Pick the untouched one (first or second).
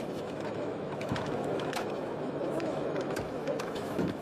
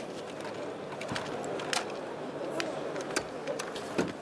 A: second